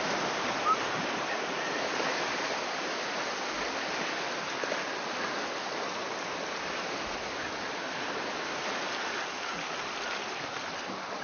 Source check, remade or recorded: recorded